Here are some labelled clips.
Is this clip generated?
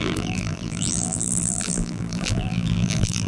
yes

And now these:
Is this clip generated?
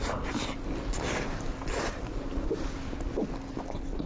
no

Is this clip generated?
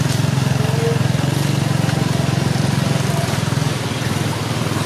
no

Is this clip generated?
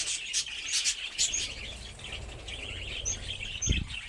no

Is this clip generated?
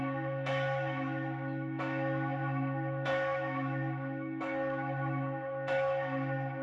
yes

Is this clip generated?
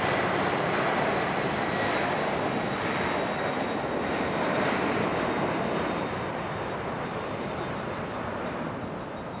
no